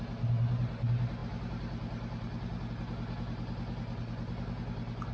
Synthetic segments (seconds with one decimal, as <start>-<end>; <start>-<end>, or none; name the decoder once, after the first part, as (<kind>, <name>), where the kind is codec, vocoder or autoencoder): none